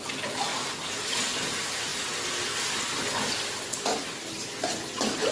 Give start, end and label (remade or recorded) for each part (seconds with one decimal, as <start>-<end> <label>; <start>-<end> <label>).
0.0-5.3 recorded